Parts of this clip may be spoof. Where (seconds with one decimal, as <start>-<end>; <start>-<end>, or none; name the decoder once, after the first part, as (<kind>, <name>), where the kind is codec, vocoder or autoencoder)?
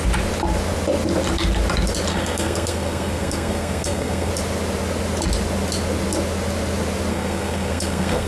2.1-4.3 (codec, SNAC); 7.1-8.3